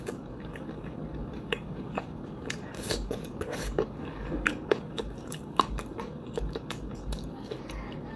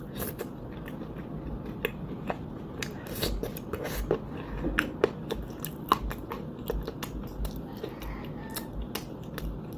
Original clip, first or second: second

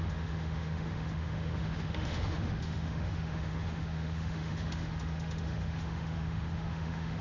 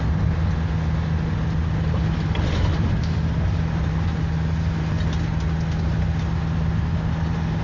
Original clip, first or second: second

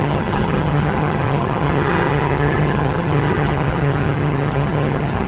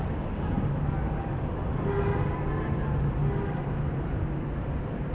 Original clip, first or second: second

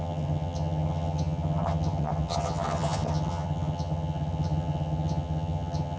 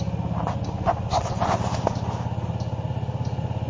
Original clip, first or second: second